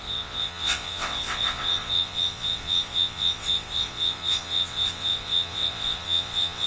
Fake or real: fake